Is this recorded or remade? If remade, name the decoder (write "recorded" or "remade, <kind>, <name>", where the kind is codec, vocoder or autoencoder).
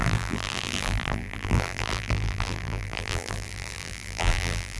remade, vocoder, BigVGAN v2